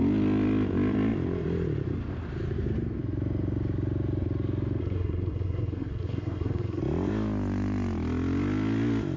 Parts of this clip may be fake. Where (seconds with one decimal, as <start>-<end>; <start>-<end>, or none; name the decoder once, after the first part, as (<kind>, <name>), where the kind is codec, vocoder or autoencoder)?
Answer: 4.8-6.8 (codec, SNAC)